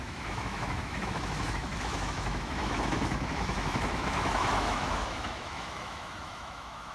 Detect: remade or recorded remade